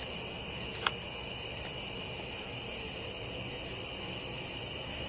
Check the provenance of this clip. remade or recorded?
recorded